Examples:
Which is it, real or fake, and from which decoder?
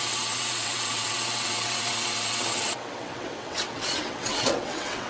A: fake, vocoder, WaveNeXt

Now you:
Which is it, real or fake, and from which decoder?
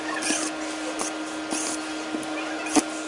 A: real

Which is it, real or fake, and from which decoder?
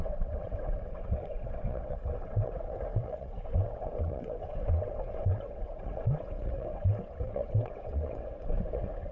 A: fake, vocoder, WaveNeXt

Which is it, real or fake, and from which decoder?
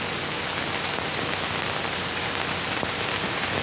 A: real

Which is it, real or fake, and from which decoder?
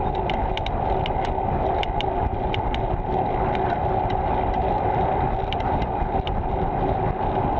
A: real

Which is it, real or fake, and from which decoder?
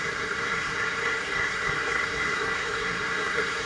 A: fake, codec, SNAC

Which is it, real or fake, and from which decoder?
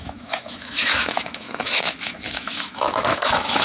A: fake, autoencoder, DAC-VAE